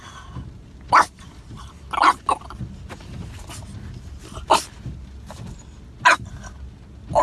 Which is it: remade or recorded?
recorded